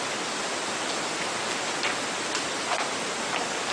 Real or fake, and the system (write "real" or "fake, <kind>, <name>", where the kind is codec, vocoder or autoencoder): real